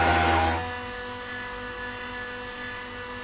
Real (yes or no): yes